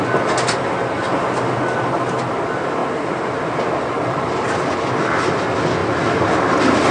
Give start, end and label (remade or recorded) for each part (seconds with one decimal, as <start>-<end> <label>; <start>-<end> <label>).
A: 0.0-6.9 recorded